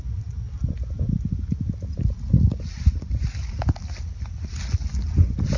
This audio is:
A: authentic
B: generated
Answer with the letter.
A